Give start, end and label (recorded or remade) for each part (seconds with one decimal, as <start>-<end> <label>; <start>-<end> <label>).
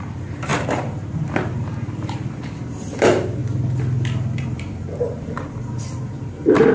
0.0-3.4 remade; 3.4-4.4 recorded; 4.4-6.7 remade